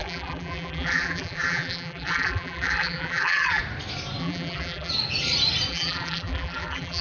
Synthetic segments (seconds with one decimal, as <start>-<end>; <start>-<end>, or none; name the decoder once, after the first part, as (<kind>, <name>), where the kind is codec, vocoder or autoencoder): 0.0-3.6 (vocoder, BigVGAN v2); 4.2-4.9; 5.7-7.0

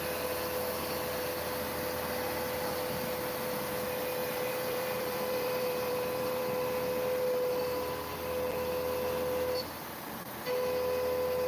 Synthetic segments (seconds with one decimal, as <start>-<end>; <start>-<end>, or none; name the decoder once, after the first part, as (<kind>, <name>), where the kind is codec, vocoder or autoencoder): 4.2-6.4 (vocoder, BigVGAN v2)

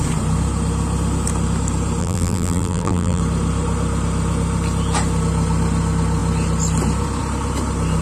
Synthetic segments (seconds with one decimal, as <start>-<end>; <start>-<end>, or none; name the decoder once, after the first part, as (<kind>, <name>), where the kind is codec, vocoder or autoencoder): 2.0-3.2 (vocoder, BigVGAN v2)

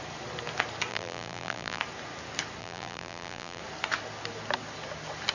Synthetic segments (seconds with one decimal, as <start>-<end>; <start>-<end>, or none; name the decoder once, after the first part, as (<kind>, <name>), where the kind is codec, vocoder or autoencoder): 0.9-1.8 (vocoder, BigVGAN v2); 2.6-3.6